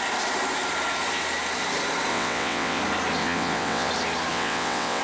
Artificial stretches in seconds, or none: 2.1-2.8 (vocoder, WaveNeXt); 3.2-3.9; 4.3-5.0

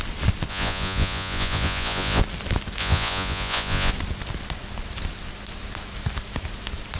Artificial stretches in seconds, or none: 0.5-2.2 (vocoder, Vocos); 2.8-3.9

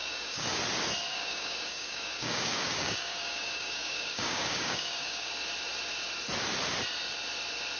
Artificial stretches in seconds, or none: 0.0-0.6 (codec, DAC); 1.1-5.3

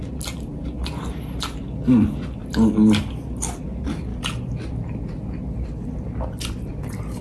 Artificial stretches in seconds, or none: 4.1-5.0 (vocoder, BigVGAN v2)

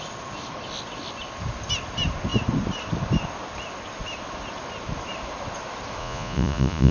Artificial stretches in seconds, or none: 6.0-6.9 (vocoder, Vocos)